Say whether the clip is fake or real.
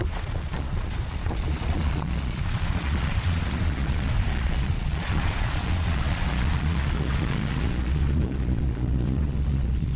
fake